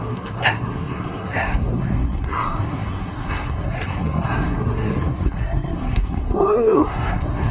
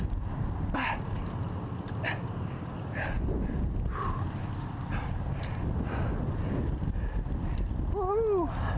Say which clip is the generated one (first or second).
first